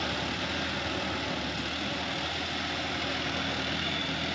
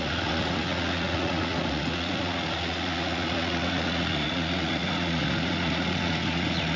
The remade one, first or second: second